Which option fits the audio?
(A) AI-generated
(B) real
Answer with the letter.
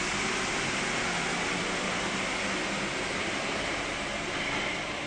B